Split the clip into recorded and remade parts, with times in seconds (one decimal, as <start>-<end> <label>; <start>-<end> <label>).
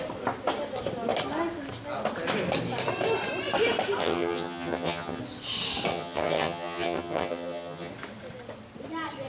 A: 0.0-4.0 recorded; 4.0-5.2 remade; 5.2-5.9 recorded; 5.9-7.9 remade; 7.9-9.3 recorded